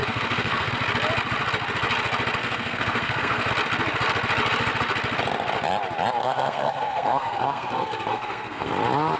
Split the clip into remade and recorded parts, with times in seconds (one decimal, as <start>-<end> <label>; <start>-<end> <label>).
0.0-0.7 remade; 0.7-2.4 recorded; 2.4-3.5 remade; 3.5-6.2 recorded; 6.2-8.7 remade; 8.7-9.2 recorded